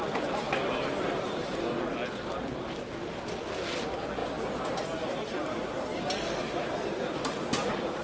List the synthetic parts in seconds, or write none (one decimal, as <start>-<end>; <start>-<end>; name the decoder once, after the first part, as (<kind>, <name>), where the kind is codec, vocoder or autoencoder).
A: none